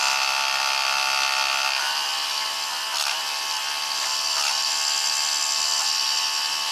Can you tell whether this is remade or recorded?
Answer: recorded